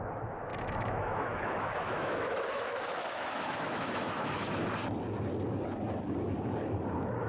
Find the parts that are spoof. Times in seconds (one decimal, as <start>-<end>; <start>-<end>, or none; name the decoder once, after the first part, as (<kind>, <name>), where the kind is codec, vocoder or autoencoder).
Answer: 0.5-4.7 (autoencoder, DAC-VAE)